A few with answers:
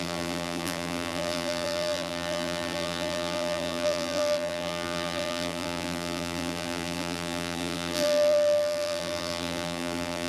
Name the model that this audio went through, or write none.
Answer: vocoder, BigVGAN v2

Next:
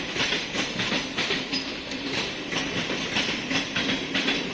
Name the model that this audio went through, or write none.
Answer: vocoder, BigVGAN v2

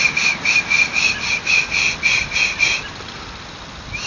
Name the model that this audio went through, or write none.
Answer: none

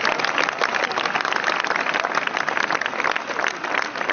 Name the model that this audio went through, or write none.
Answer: none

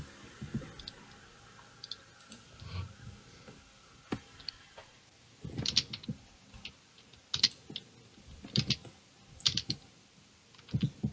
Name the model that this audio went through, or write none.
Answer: none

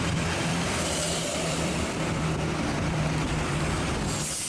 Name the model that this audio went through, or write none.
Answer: vocoder, BigVGAN v2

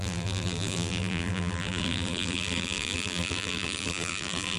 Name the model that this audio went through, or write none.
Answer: vocoder, BigVGAN v2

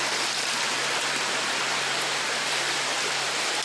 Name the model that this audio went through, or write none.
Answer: vocoder, BigVGAN v2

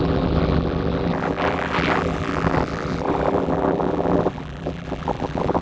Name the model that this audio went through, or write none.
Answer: vocoder, BigVGAN v2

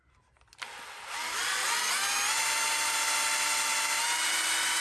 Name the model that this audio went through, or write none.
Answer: none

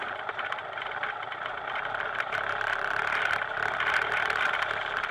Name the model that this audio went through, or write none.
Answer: vocoder, BigVGAN v2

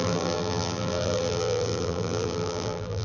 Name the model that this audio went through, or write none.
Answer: vocoder, BigVGAN v2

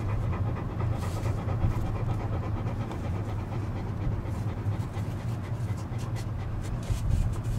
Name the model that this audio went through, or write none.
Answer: none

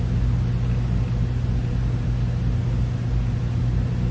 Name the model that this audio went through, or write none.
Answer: none